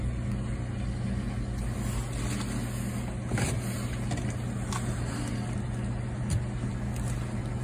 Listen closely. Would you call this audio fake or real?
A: real